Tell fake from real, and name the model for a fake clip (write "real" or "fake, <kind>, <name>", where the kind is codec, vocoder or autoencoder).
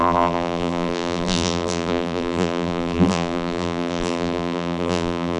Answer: fake, vocoder, BigVGAN v2